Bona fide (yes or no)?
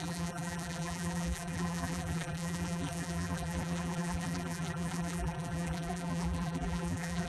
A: no